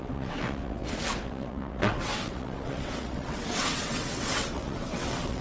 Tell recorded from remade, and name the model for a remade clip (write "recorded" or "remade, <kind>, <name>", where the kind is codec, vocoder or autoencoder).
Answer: remade, vocoder, WaveNeXt